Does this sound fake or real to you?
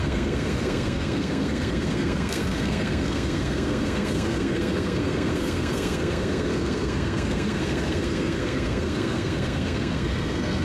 fake